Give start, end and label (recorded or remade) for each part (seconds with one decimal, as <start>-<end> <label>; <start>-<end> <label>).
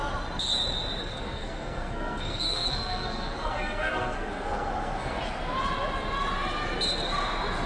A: 0.0-1.0 recorded; 1.0-5.2 remade; 5.2-7.7 recorded